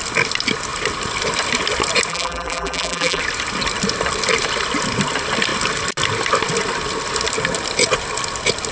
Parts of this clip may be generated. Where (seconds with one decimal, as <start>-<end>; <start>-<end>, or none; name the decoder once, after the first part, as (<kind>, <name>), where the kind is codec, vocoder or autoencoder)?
2.1-3.2 (vocoder, BigVGAN v2)